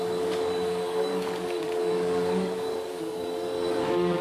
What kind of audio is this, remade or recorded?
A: remade